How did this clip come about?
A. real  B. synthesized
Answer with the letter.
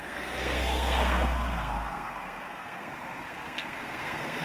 B